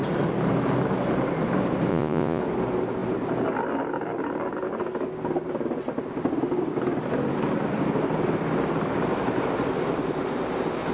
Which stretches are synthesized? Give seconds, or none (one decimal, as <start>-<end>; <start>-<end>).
1.9-2.4